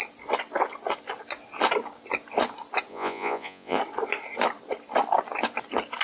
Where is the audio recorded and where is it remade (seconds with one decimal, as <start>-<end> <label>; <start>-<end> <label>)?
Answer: 0.0-2.9 recorded; 2.9-3.8 remade; 3.8-6.0 recorded